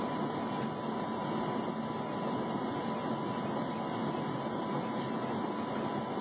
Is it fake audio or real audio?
real